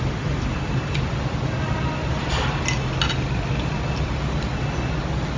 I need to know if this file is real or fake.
real